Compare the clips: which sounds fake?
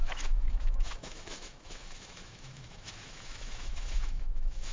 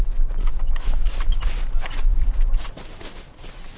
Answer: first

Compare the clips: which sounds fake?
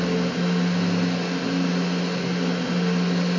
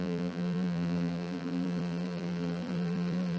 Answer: second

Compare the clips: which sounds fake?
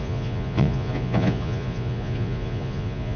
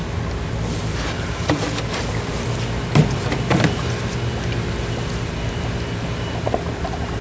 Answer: first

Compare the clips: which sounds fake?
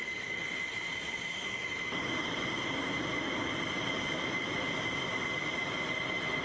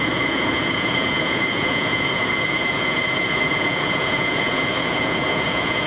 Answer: second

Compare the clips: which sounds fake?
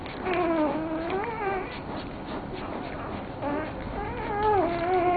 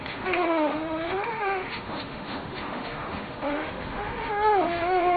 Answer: second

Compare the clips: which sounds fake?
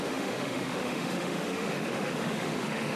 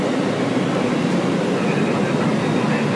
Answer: first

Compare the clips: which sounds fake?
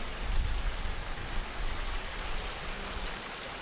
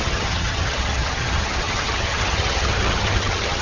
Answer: second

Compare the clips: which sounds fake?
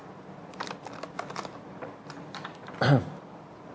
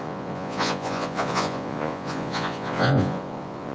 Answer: second